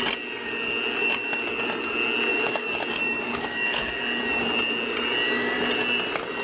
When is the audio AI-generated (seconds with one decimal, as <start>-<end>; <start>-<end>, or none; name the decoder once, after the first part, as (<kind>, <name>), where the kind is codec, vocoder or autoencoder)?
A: 2.3-4.0 (codec, DAC)